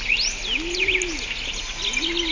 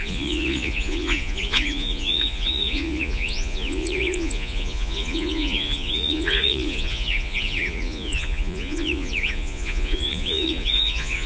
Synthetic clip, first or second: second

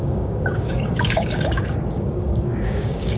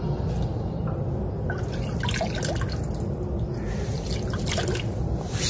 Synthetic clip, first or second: first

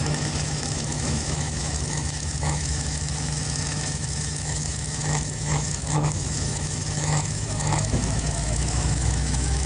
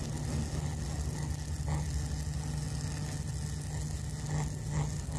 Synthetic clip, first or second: first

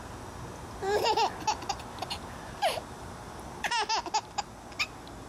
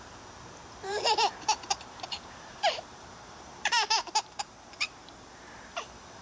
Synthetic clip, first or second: second